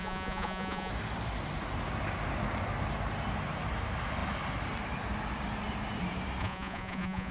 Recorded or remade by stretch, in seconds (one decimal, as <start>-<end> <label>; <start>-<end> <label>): 0.0-0.9 remade; 0.9-6.4 recorded; 6.4-7.3 remade